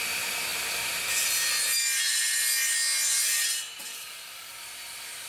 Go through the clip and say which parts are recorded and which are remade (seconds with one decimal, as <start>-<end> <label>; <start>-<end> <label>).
0.0-3.9 recorded; 3.9-4.6 remade; 4.6-5.3 recorded